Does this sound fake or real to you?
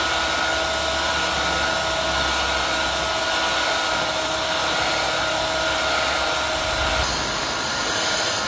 real